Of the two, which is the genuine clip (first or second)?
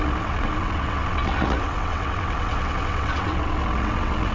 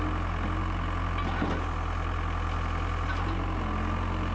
second